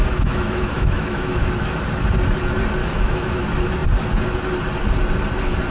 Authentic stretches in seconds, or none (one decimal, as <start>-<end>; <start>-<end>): 1.5-2.8; 3.4-5.7